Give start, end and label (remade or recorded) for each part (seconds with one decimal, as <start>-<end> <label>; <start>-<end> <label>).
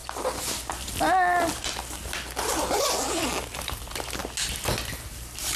0.0-3.4 recorded; 3.4-4.2 remade; 4.2-5.1 recorded; 5.1-5.6 remade